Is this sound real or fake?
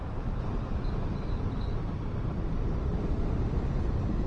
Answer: real